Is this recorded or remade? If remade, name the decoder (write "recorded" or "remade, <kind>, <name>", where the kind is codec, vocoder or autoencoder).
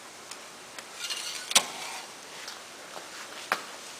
recorded